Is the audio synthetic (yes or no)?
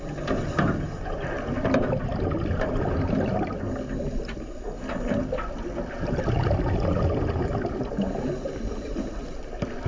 no